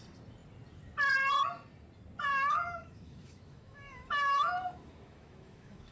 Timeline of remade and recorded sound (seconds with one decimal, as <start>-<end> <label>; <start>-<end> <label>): 0.0-2.3 recorded; 2.3-5.9 remade